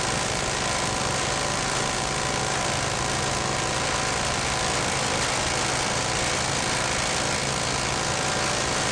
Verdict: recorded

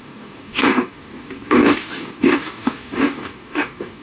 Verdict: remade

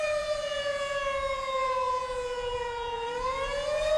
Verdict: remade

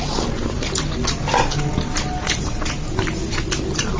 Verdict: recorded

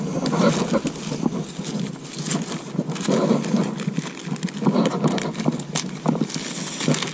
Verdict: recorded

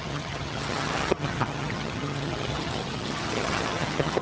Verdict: remade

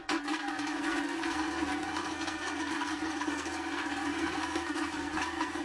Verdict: remade